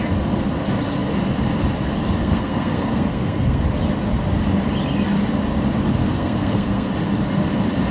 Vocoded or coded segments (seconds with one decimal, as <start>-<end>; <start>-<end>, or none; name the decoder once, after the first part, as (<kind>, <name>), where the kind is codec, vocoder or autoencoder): 2.2-3.6 (codec, SNAC); 6.0-6.9

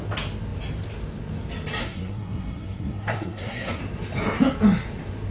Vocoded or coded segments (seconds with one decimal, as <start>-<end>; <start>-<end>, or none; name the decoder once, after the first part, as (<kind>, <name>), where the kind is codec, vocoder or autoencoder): 1.8-3.8 (codec, SNAC)